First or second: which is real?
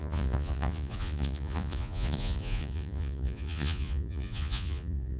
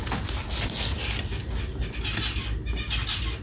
second